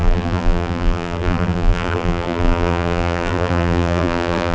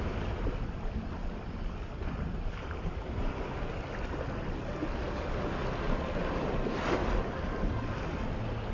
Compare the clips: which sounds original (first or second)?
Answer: second